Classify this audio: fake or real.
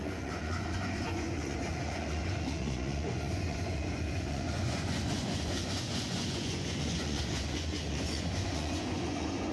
fake